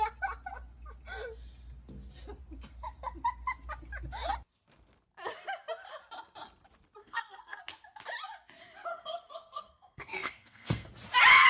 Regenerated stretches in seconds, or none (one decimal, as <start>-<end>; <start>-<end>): 7.0-7.6; 8.9-10.9